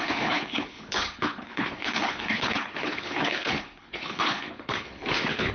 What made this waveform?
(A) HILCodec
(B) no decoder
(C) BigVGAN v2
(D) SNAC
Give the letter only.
A